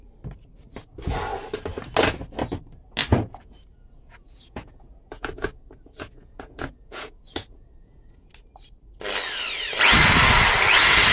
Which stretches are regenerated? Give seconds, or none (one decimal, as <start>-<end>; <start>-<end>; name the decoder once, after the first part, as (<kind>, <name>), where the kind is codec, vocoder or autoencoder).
3.1-8.3 (vocoder, Vocos)